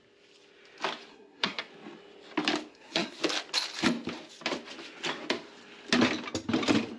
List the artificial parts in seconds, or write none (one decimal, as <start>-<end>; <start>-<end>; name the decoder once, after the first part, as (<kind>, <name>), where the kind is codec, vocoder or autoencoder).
1.1-1.7 (codec, SNAC); 2.7-3.2